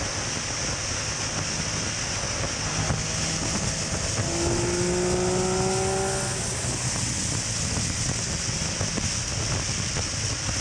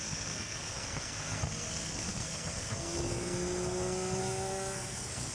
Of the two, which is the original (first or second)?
first